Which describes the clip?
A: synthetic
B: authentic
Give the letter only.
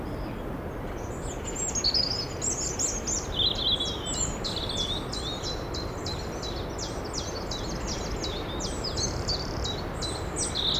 B